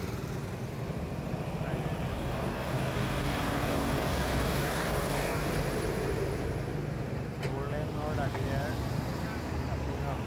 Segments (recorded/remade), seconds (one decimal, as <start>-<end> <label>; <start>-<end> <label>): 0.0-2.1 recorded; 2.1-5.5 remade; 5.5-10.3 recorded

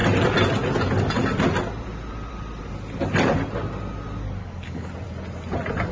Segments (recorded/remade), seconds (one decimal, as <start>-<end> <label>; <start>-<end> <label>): 0.0-4.4 recorded; 4.4-4.9 remade; 4.9-5.9 recorded

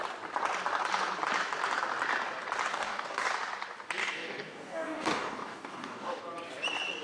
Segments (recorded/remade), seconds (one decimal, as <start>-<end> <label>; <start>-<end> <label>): 0.0-2.7 recorded; 2.7-3.3 remade; 3.3-4.0 recorded; 4.0-6.2 remade; 6.2-7.0 recorded